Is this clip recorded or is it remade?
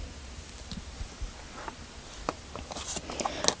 recorded